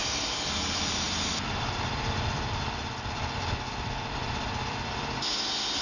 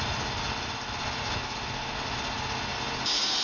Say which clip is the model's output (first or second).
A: first